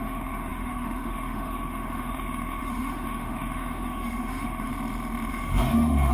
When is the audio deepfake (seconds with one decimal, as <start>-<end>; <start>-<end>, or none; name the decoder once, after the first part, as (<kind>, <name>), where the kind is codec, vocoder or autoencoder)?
0.0-4.7 (autoencoder, DAC-VAE); 5.3-6.1